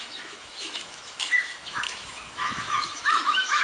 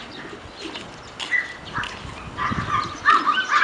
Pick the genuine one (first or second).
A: second